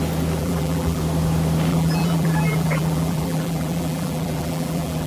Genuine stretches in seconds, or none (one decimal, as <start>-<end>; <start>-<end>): 0.0-0.4; 1.0-1.7